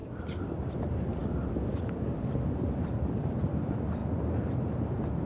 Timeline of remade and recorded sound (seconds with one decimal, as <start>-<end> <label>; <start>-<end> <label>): 0.0-4.0 remade; 4.0-5.3 recorded